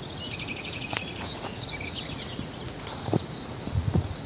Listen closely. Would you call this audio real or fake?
fake